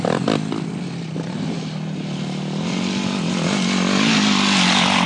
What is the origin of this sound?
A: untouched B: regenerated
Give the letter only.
A